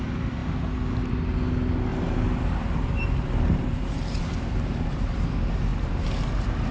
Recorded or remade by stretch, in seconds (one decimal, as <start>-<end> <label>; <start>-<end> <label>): 0.0-1.9 recorded; 1.9-5.1 remade; 5.1-5.7 recorded; 5.7-6.7 remade